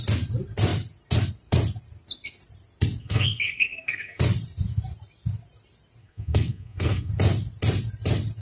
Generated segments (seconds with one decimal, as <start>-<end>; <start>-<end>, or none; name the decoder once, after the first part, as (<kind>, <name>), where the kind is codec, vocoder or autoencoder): 3.0-4.2 (codec, SNAC); 6.0-7.1